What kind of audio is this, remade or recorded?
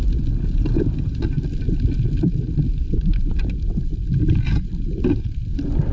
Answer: recorded